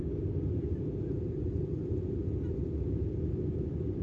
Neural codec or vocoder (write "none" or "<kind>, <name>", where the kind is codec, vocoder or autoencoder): none